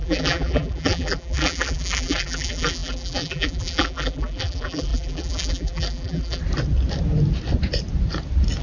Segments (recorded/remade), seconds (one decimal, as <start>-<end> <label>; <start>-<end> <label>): 0.0-6.4 remade; 6.4-8.6 recorded